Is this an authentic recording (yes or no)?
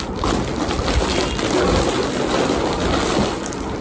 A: yes